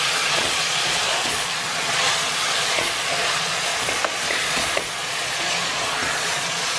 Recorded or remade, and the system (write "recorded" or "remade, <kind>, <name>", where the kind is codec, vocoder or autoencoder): remade, vocoder, Vocos